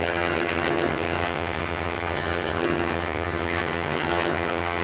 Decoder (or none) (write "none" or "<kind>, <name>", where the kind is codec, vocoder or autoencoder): vocoder, HiFi-GAN